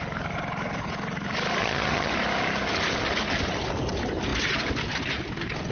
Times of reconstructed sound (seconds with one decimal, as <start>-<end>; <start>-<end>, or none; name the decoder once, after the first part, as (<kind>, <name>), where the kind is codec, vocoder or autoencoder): 1.6-2.1 (vocoder, HiFi-GAN)